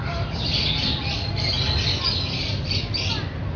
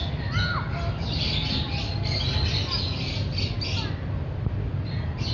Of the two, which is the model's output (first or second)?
first